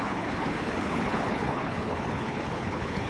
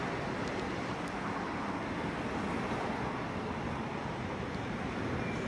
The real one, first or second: second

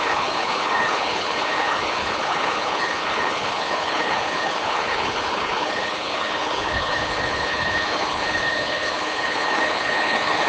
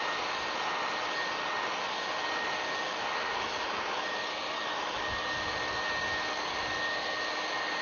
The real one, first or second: second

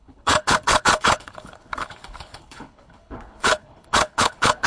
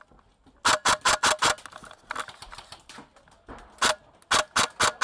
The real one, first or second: second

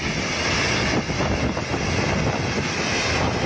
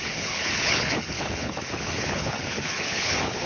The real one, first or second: first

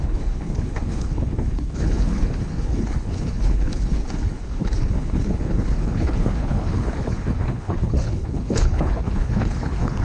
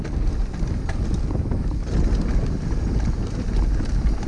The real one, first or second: second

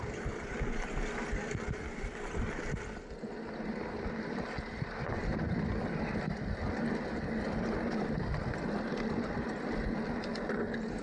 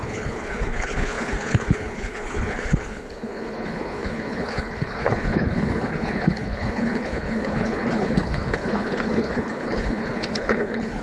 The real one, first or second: first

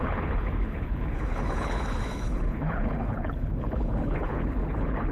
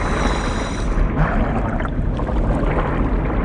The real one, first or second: second